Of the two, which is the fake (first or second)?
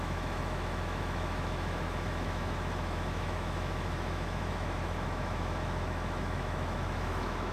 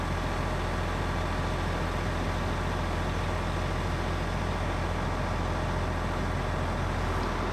first